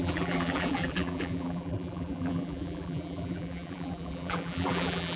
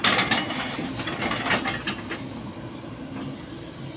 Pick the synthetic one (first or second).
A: first